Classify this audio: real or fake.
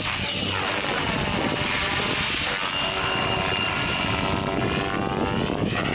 real